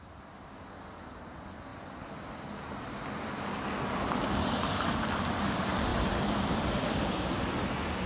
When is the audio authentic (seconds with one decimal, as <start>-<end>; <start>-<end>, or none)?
0.0-5.9; 7.3-8.1